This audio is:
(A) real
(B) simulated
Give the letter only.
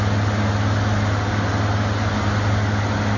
A